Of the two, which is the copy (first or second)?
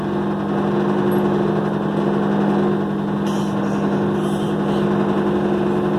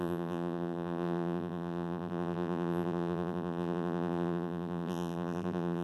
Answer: second